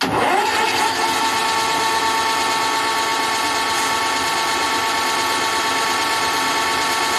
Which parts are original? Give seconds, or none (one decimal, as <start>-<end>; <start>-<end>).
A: 0.0-7.2